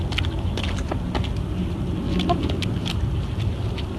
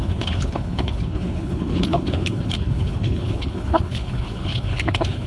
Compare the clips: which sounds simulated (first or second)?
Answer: second